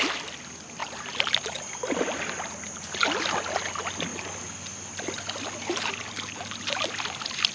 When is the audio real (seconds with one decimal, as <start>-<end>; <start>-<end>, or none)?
0.0-7.5